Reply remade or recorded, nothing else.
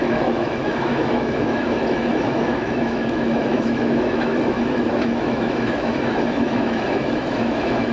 remade